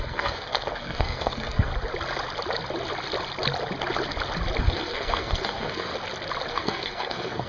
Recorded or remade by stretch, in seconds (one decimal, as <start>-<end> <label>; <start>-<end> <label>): 0.0-1.7 remade; 1.7-4.6 recorded; 4.6-5.9 remade; 5.9-6.5 recorded; 6.5-7.5 remade